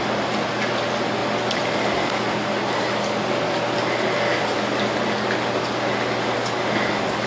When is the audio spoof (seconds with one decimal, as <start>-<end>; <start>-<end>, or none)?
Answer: none